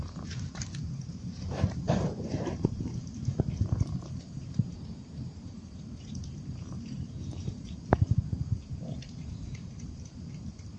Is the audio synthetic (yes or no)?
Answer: yes